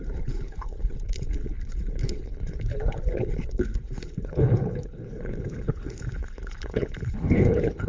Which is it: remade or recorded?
remade